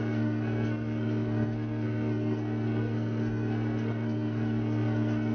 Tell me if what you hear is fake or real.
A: fake